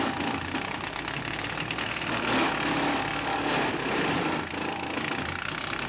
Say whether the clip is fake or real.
fake